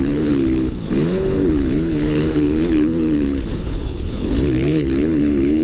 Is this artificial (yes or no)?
yes